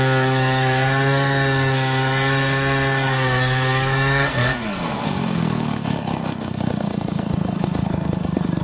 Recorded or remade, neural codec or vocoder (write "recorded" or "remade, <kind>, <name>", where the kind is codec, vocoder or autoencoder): remade, codec, SNAC